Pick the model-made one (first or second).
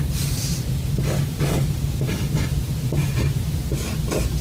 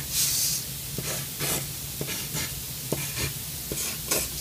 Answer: first